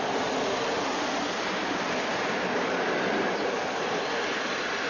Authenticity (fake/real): real